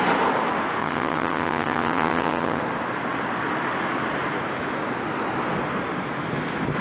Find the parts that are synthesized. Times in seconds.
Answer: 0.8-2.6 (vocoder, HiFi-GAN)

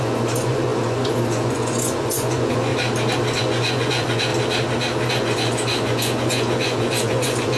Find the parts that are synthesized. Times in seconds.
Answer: 0.0-2.7 (vocoder, Vocos); 3.4-4.3; 5.1-7.6

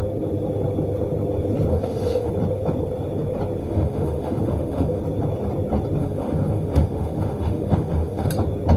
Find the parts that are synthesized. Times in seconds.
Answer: 1.7-2.3 (autoencoder, DAC-VAE); 3.6-5.0; 6.0-8.3

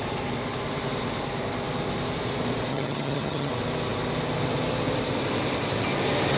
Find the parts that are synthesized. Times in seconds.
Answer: 2.7-3.5 (vocoder, HiFi-GAN)

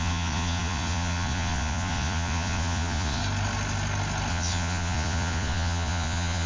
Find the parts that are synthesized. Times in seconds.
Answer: 0.0-3.2 (vocoder, Vocos); 4.3-6.5

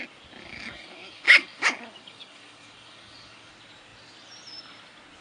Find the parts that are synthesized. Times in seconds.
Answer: 0.4-3.5 (codec, DAC)

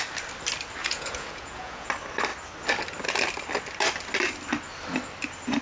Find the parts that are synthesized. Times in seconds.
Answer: 0.8-1.9 (vocoder, Vocos)

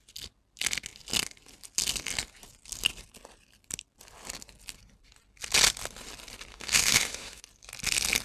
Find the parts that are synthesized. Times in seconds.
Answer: 6.5-7.4 (autoencoder, DAC-VAE)